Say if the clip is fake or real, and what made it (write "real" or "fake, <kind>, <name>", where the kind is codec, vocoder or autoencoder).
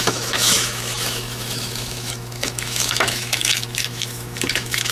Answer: fake, autoencoder, DAC-VAE